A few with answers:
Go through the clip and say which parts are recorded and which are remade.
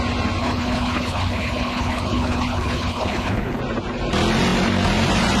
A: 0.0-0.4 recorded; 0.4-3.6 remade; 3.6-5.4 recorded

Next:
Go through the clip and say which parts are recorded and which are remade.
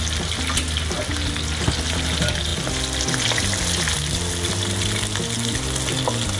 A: 0.0-6.4 recorded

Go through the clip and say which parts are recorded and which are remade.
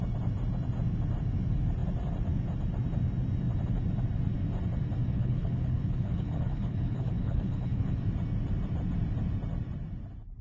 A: 0.0-5.1 recorded; 5.1-8.0 remade; 8.0-10.4 recorded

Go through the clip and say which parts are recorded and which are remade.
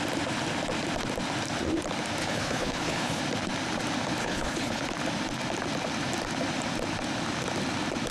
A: 0.0-2.2 recorded; 2.2-3.2 remade; 3.2-4.2 recorded; 4.2-4.8 remade; 4.8-8.1 recorded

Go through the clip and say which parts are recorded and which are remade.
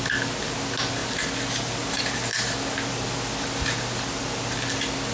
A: 0.0-5.1 recorded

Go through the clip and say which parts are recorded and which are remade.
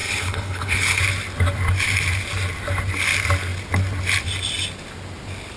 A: 0.0-1.0 remade; 1.0-5.6 recorded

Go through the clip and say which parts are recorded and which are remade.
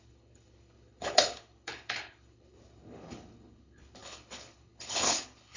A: 0.0-5.6 remade